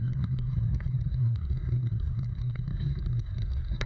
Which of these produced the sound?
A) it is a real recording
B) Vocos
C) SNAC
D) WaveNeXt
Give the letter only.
C